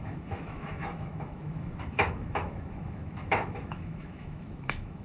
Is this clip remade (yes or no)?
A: yes